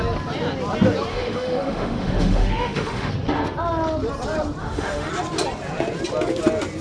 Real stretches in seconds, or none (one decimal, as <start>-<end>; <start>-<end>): 0.0-1.1; 3.1-4.6; 5.1-6.8